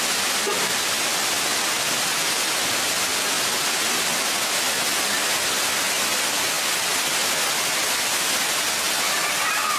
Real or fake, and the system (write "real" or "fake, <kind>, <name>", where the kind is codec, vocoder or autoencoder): fake, vocoder, BigVGAN v2